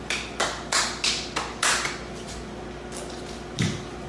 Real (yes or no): yes